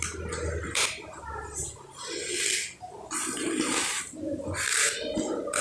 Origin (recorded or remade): recorded